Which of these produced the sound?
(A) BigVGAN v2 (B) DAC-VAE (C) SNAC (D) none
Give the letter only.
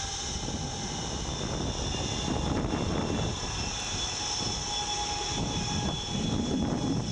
D